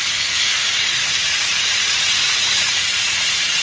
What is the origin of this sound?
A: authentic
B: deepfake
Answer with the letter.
B